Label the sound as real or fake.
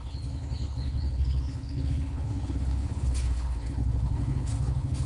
fake